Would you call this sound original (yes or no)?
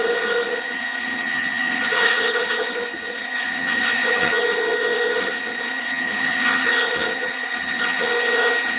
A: no